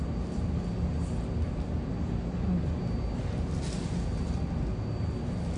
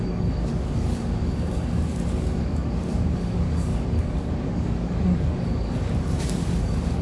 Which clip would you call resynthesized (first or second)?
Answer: second